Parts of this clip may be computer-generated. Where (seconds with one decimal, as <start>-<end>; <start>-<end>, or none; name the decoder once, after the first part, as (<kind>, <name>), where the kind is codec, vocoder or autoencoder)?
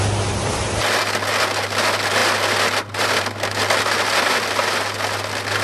none